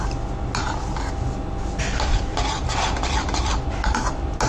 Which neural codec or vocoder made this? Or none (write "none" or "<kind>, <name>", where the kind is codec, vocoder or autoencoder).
none